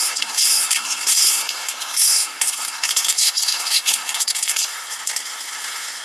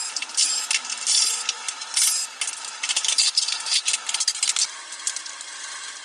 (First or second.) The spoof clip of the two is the first